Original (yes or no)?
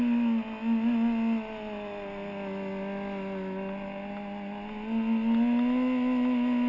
yes